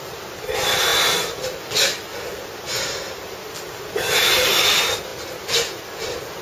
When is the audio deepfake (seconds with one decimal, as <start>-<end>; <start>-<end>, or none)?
none